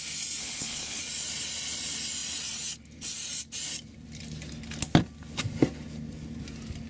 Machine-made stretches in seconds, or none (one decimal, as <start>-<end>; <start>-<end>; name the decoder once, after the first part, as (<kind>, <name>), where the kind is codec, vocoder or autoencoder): 0.4-1.0 (codec, HILCodec)